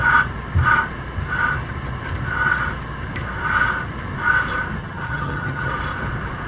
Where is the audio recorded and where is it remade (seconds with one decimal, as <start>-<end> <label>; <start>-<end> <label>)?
0.0-4.8 recorded; 4.8-5.7 remade; 5.7-6.5 recorded